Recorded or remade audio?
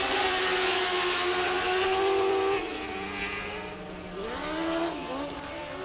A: recorded